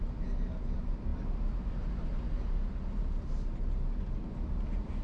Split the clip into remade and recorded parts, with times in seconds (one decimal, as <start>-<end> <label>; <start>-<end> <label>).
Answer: 0.0-5.0 recorded